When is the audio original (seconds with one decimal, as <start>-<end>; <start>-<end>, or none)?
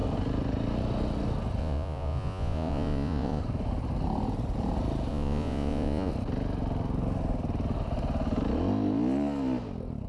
0.0-1.6; 3.4-5.1; 6.1-10.1